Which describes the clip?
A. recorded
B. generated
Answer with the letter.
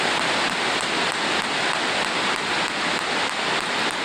A